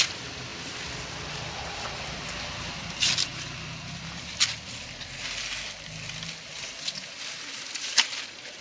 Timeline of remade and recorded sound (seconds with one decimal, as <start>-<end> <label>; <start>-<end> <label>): 0.0-8.6 recorded